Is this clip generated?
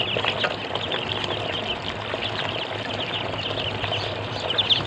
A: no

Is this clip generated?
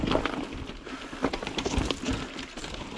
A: no